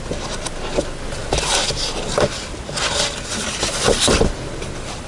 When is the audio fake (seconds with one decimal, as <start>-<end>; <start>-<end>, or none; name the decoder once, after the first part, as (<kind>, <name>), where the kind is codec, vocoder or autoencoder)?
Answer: none

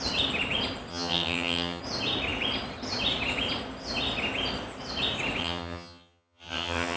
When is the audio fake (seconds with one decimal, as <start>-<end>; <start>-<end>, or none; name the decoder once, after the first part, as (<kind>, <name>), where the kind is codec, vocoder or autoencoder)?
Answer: 0.9-1.8 (vocoder, HiFi-GAN); 5.4-7.0

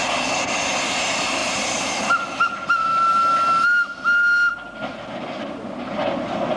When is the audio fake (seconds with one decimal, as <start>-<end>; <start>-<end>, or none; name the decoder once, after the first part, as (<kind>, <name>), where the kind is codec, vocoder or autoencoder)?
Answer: none

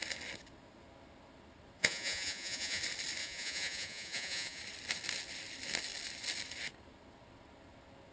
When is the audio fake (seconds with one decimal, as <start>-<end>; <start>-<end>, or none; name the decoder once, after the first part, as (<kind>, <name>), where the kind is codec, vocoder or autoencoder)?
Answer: 1.8-2.8 (vocoder, Vocos); 3.2-4.6